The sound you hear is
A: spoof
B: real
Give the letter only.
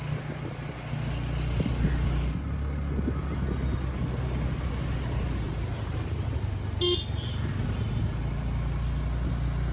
B